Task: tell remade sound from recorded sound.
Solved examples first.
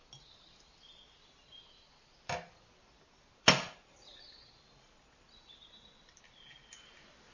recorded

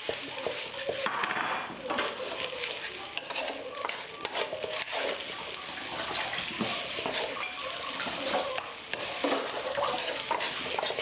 recorded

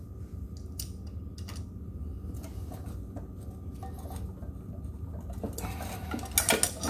recorded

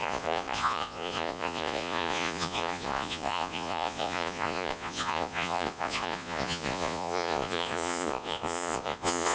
remade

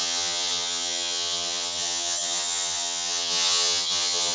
remade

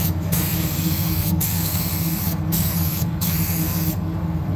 remade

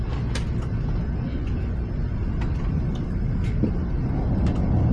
recorded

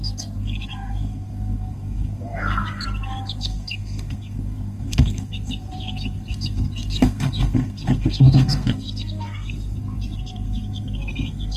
remade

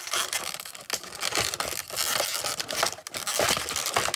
recorded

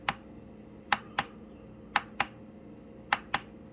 recorded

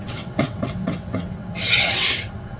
remade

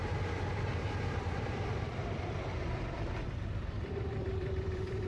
remade